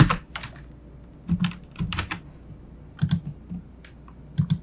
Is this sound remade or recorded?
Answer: recorded